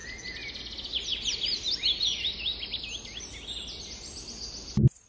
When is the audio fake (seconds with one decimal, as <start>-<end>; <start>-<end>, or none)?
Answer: none